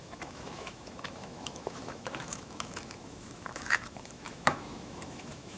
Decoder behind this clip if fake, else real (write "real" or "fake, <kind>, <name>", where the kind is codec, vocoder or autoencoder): fake, autoencoder, DAC-VAE